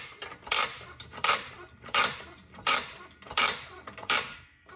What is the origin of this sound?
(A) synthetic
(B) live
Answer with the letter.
A